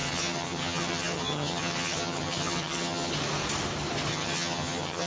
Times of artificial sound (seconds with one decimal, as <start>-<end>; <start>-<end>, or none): 0.0-3.1; 4.1-5.1